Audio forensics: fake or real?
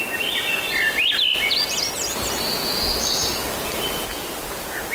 real